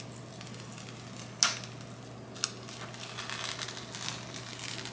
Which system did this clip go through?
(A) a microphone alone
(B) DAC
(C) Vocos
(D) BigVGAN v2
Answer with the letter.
A